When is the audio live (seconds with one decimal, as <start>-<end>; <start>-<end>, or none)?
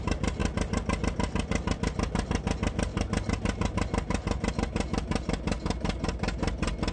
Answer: 0.0-6.9